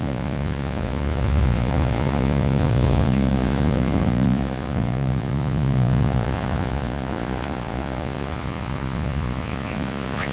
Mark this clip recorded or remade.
remade